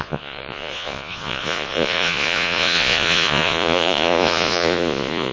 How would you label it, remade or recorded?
remade